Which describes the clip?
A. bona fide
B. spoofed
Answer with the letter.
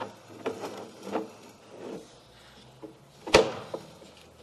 A